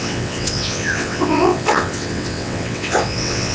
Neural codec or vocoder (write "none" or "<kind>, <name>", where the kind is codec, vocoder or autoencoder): vocoder, WaveNeXt